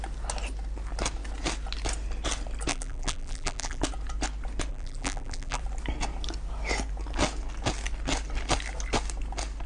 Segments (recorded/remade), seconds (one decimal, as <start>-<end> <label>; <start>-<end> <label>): 0.0-2.7 recorded; 2.7-3.8 remade; 3.8-4.7 recorded; 4.7-5.6 remade; 5.6-9.7 recorded